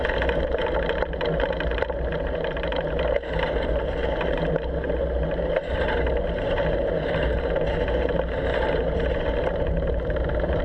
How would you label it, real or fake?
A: fake